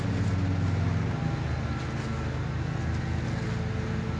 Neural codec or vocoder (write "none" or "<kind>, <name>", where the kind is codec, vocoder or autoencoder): none